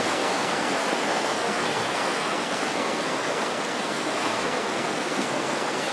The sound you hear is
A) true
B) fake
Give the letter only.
B